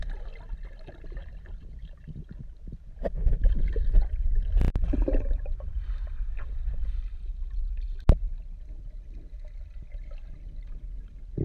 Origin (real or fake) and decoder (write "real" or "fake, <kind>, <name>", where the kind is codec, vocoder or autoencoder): real